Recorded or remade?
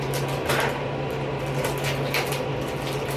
recorded